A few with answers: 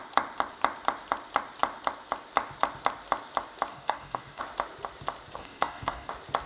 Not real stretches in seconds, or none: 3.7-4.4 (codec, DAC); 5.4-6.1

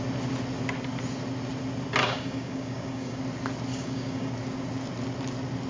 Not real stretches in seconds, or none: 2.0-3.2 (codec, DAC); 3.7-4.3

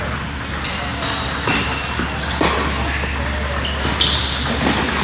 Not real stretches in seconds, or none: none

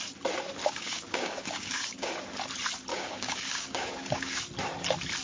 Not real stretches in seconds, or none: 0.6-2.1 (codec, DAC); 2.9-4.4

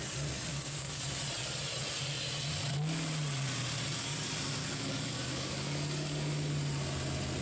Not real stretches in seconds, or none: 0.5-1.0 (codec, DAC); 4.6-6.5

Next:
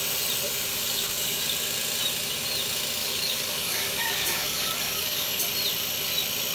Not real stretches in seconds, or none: 0.7-1.4 (codec, DAC); 3.0-5.4